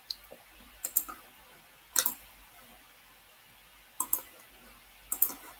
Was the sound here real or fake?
fake